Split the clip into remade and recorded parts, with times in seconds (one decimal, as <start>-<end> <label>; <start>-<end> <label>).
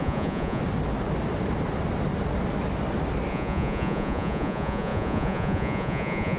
0.0-0.6 remade; 0.6-3.3 recorded; 3.3-6.4 remade